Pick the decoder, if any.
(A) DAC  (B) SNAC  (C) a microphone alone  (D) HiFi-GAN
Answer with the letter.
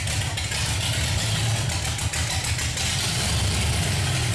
C